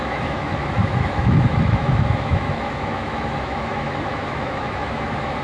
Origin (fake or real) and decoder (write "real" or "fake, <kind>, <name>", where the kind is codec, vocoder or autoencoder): fake, autoencoder, DAC-VAE